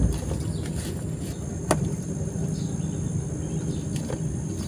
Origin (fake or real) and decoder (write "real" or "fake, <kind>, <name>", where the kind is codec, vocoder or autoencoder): real